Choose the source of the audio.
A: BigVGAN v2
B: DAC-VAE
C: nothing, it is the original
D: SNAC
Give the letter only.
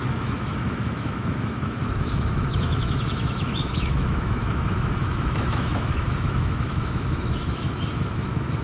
B